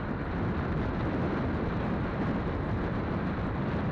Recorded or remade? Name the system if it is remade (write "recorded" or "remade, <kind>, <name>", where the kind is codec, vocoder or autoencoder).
recorded